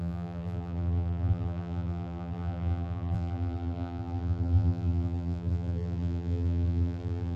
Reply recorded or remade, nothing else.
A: remade